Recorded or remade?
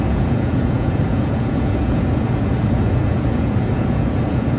remade